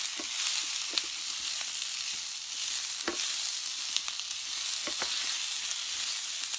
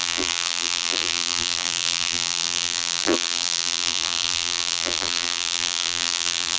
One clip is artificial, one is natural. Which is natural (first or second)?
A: first